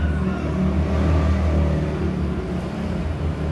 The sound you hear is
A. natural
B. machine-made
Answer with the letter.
A